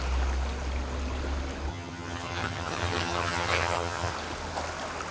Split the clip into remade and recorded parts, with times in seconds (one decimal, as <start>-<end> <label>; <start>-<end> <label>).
0.0-1.7 recorded; 1.7-4.1 remade; 4.1-5.1 recorded